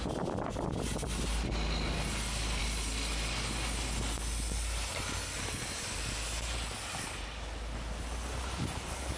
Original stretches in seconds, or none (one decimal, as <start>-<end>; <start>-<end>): 0.0-9.2